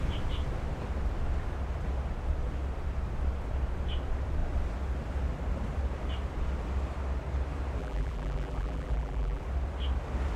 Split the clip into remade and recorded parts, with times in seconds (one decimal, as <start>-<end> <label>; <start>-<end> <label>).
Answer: 0.0-7.8 recorded; 7.8-9.4 remade; 9.4-10.4 recorded